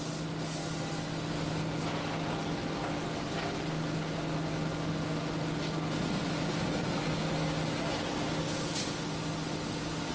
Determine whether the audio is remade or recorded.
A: recorded